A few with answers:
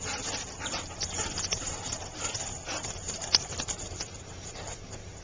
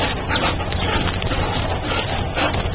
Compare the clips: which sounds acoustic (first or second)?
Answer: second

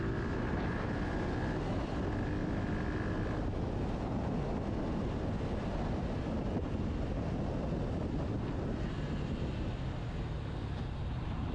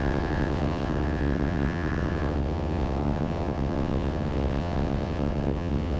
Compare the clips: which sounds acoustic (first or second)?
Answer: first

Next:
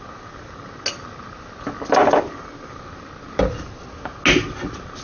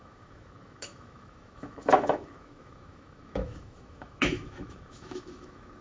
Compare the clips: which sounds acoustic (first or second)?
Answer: first